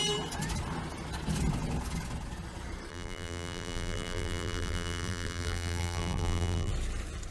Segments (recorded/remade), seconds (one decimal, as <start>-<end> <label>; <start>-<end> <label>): 0.0-2.9 recorded; 2.9-6.7 remade; 6.7-7.3 recorded